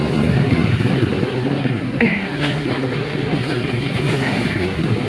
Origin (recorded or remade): remade